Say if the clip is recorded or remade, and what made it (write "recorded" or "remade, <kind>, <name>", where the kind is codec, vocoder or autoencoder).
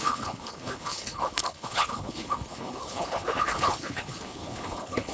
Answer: remade, codec, HILCodec